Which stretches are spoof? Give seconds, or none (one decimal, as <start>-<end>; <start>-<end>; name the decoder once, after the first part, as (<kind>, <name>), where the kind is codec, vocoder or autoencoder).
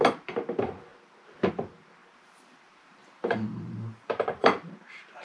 2.0-5.2 (vocoder, BigVGAN v2)